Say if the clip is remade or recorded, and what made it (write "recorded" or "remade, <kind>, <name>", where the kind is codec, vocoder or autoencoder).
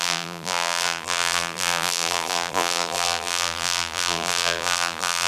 remade, vocoder, BigVGAN v2